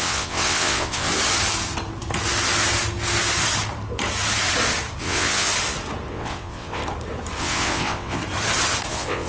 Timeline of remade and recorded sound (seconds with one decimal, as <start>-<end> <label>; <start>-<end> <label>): 0.0-1.1 remade; 1.1-5.0 recorded; 5.0-5.5 remade; 5.5-6.1 recorded; 6.1-6.8 remade; 6.8-7.4 recorded; 7.4-8.2 remade; 8.2-8.9 recorded; 8.9-9.3 remade